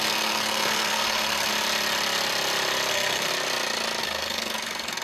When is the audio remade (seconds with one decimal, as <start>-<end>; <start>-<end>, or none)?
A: 0.0-1.5; 2.9-3.3; 4.0-5.0